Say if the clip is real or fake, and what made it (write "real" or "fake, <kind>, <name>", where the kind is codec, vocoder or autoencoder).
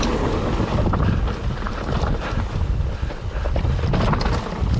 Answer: real